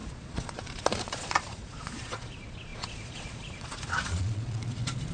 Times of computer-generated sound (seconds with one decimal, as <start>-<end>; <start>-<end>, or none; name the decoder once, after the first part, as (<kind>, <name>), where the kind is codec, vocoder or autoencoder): 0.0-5.1 (vocoder, Vocos)